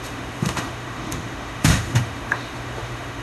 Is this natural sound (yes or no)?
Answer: no